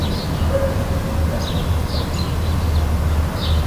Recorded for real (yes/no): yes